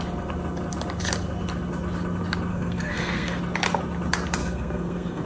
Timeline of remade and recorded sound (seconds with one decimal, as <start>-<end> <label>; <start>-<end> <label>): 0.0-2.5 recorded; 2.5-3.4 remade; 3.4-4.4 recorded; 4.4-5.2 remade